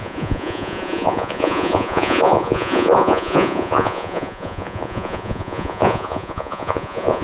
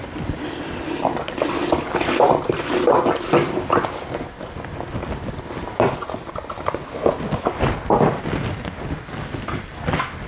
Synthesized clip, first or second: first